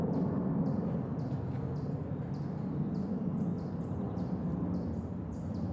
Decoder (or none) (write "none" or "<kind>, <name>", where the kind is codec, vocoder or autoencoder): none